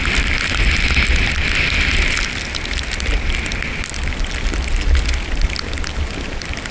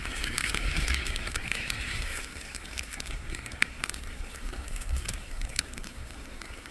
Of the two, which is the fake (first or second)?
second